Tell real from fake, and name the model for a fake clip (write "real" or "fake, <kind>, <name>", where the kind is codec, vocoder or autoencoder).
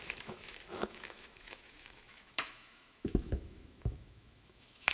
fake, autoencoder, DAC-VAE